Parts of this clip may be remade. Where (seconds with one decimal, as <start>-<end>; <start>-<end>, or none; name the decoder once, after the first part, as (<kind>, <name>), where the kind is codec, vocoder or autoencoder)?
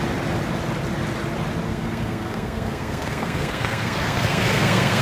1.7-5.0 (codec, SNAC)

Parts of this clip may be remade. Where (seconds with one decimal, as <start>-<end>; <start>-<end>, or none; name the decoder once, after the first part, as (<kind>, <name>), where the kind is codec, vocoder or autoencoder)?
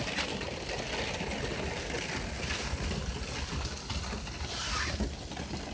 none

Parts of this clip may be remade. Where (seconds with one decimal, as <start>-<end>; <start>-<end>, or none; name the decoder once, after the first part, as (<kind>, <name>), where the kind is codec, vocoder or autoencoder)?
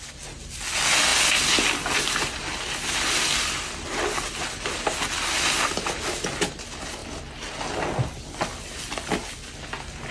none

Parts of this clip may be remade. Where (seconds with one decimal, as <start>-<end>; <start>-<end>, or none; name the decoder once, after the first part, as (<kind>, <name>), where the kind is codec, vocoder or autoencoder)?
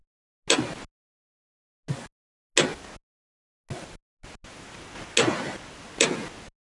none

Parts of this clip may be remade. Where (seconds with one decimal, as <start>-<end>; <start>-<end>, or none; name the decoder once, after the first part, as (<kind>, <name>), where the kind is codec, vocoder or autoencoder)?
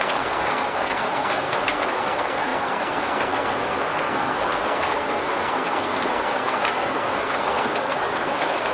0.0-8.7 (codec, SNAC)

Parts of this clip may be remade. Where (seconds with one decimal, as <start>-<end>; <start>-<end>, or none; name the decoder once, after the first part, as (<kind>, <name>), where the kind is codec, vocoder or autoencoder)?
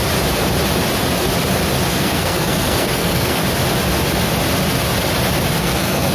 1.9-3.4 (codec, SNAC); 5.6-6.1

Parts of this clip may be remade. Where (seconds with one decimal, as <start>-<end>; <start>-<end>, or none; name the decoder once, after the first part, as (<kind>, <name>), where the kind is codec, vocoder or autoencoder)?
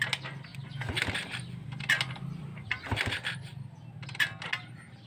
none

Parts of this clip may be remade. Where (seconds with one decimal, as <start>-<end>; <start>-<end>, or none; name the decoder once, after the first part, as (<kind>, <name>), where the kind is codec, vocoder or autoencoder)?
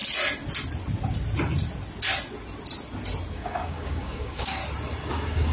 3.3-4.6 (codec, DAC); 5.1-5.5